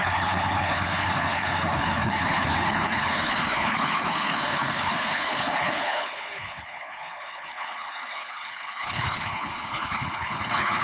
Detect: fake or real fake